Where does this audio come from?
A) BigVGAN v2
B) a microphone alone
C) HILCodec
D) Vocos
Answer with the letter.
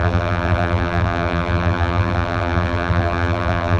A